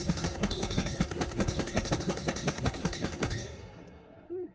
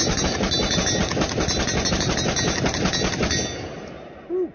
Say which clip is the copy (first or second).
first